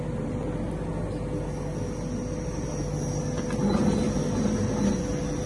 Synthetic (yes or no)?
no